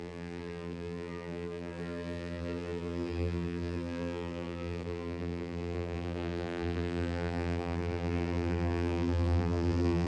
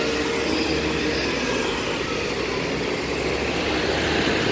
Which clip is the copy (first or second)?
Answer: first